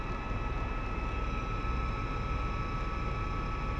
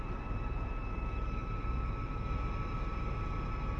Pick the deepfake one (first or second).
second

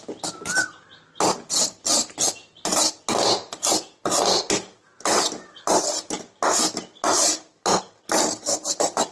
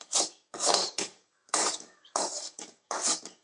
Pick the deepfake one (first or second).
second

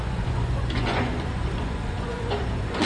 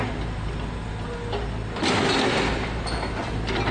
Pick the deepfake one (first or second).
first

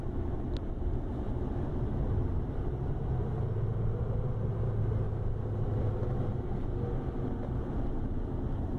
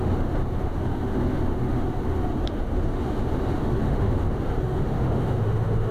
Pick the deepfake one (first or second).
second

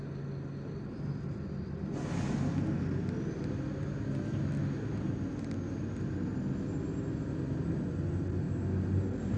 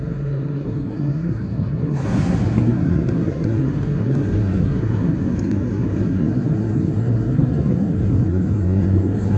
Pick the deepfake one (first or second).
second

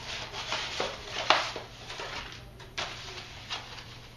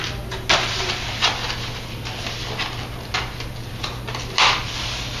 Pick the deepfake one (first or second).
first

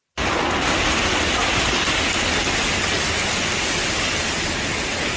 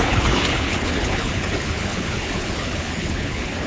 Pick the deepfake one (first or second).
second